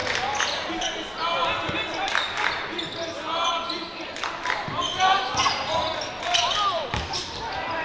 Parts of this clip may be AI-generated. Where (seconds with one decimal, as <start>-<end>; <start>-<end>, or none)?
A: none